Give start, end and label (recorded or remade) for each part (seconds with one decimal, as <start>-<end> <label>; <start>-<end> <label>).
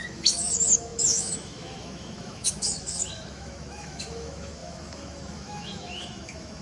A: 0.0-6.6 remade